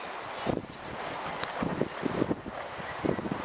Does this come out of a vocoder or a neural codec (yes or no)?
no